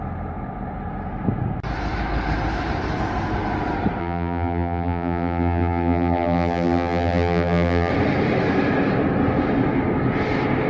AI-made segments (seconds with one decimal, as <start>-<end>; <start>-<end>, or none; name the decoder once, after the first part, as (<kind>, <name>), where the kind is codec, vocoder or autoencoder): 4.0-7.9 (vocoder, BigVGAN v2)